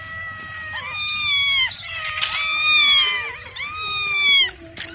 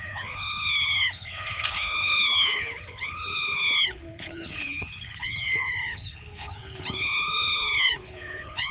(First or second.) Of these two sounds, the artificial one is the second